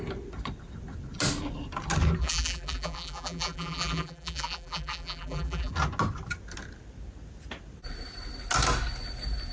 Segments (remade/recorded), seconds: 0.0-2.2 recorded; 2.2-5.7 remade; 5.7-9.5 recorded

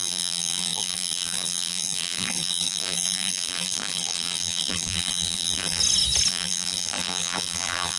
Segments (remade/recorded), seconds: 0.0-5.8 remade; 5.8-6.3 recorded; 6.3-8.0 remade

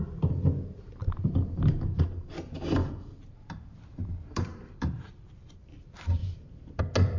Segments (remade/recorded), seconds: 0.0-1.0 recorded; 1.0-2.3 remade; 2.3-2.8 recorded; 2.8-5.7 remade; 5.7-6.2 recorded; 6.2-6.8 remade; 6.8-7.2 recorded

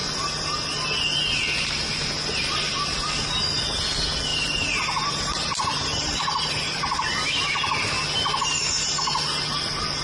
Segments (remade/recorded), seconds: 0.0-4.3 recorded; 4.3-6.8 remade; 6.8-10.0 recorded

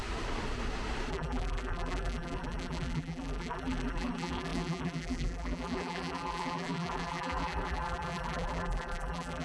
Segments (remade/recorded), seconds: 0.0-1.1 recorded; 1.1-9.4 remade

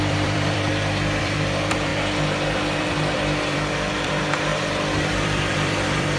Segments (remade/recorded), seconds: 0.0-0.7 remade; 0.7-1.2 recorded; 1.2-1.9 remade; 1.9-2.8 recorded; 2.8-6.2 remade

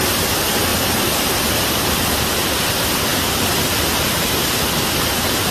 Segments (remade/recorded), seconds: 0.0-3.1 recorded; 3.1-4.7 remade; 4.7-5.5 recorded

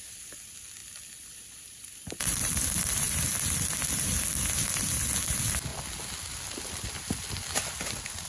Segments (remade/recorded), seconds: 0.0-0.8 recorded; 0.8-3.3 remade; 3.3-8.3 recorded